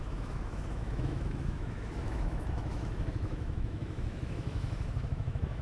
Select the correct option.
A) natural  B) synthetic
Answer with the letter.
B